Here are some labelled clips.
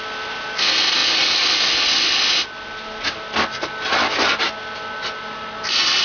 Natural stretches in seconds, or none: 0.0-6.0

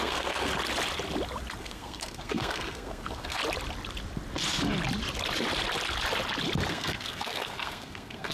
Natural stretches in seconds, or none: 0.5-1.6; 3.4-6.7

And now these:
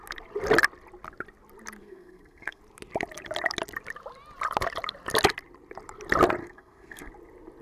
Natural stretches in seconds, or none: 0.0-1.8; 2.6-6.4; 7.1-7.6

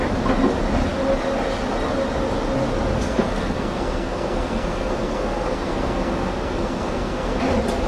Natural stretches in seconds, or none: 0.0-2.9; 7.4-7.9

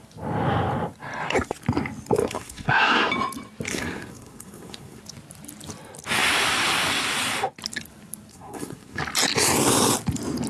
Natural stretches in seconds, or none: 0.0-2.2; 3.1-3.7; 5.0-8.3; 9.0-10.5

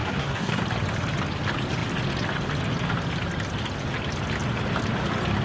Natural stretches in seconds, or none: 0.6-5.4

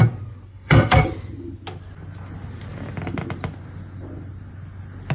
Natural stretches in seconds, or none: 0.0-0.5; 1.0-5.1